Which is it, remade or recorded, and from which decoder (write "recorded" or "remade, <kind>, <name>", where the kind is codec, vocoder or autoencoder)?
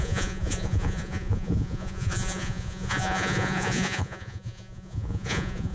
remade, vocoder, Vocos